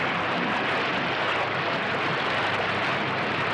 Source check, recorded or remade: recorded